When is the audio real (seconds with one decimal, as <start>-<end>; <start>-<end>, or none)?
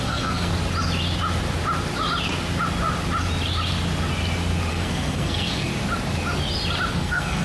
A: 0.5-4.7; 5.7-6.9